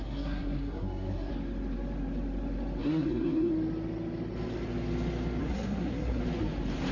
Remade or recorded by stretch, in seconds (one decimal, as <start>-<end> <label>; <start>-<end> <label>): 0.0-1.3 remade; 1.3-2.8 recorded; 2.8-3.5 remade; 3.5-5.4 recorded; 5.4-6.2 remade; 6.2-6.9 recorded